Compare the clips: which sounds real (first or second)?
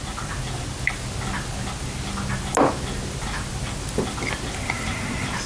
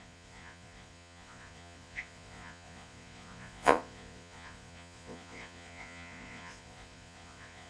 first